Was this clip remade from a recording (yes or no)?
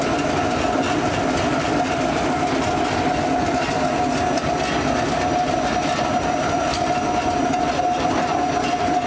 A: no